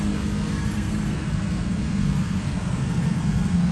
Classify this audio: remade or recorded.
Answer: remade